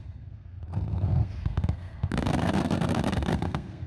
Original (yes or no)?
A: no